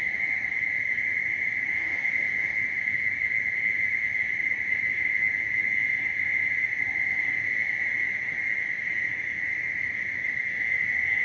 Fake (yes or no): no